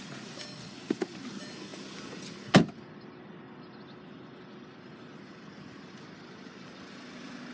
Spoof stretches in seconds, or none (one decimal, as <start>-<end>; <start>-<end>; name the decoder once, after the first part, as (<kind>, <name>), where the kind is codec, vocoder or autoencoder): none